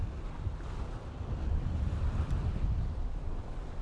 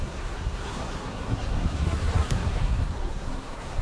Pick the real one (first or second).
first